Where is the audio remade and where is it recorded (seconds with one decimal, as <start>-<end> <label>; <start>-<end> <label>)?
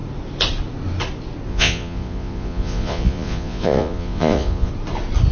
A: 0.0-1.5 recorded; 1.5-4.7 remade; 4.7-5.3 recorded